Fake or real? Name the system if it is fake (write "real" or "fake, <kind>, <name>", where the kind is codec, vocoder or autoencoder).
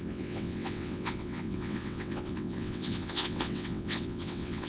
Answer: fake, vocoder, WaveNeXt